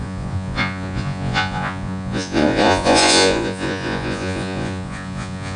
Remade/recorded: remade